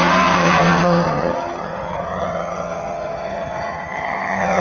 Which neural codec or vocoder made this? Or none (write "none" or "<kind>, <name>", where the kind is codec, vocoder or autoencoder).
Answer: vocoder, HiFi-GAN